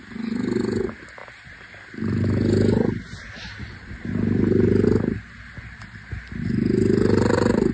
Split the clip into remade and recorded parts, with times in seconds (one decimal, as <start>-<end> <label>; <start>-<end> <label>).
0.0-7.7 recorded